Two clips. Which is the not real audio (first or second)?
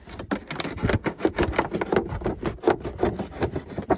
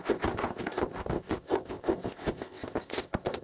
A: second